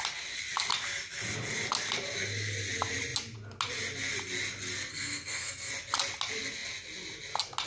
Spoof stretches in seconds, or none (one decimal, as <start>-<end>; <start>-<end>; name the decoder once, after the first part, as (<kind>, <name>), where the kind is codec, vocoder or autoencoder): 4.9-5.7 (codec, SNAC)